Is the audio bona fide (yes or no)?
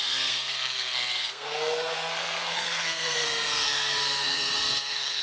no